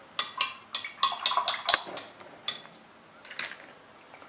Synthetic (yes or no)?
no